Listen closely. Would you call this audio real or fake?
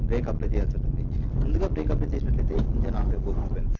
real